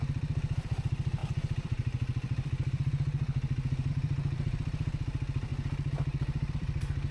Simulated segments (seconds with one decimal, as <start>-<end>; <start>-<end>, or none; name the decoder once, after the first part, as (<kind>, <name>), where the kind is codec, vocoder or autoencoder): 0.0-5.5 (vocoder, BigVGAN v2); 6.5-7.1